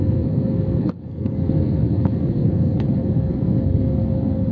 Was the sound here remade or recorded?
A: remade